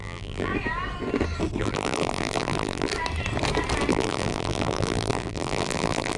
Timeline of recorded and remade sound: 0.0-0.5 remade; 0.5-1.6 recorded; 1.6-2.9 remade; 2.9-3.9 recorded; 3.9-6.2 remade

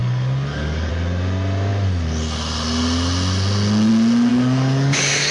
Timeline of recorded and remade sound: 0.0-0.9 remade; 0.9-4.3 recorded; 4.3-5.3 remade

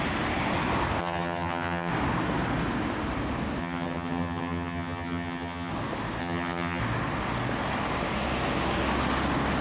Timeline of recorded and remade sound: 0.0-1.0 recorded; 1.0-1.9 remade; 1.9-3.6 recorded; 3.6-5.7 remade; 5.7-6.2 recorded; 6.2-6.8 remade; 6.8-9.6 recorded

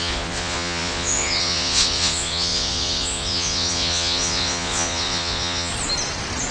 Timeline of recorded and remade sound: 0.0-5.7 remade; 5.7-6.5 recorded

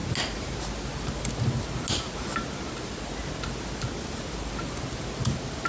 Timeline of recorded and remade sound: 0.0-5.7 recorded